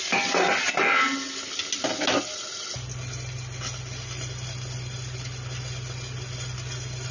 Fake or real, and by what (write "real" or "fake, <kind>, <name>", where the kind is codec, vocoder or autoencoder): real